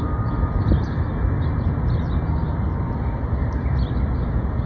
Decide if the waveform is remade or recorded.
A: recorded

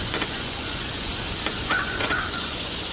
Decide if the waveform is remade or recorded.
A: remade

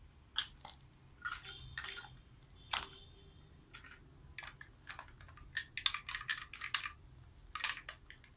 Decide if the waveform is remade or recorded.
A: recorded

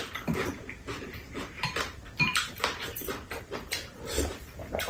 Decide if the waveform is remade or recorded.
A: remade